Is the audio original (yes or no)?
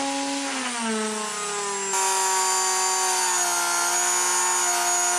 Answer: yes